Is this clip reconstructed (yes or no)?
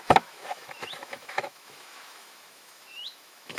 yes